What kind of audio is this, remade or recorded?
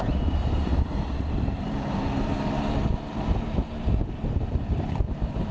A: remade